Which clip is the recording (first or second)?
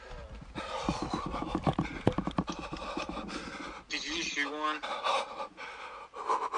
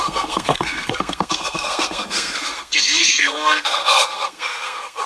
first